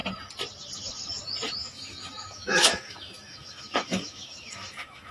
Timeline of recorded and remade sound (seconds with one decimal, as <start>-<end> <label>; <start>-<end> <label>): 0.0-1.6 recorded; 1.6-5.1 remade